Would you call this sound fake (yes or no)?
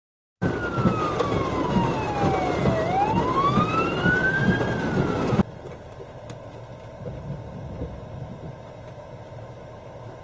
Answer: no